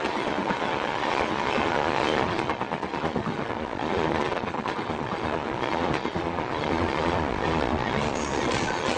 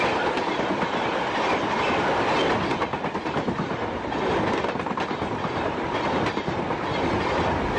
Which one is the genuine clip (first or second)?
second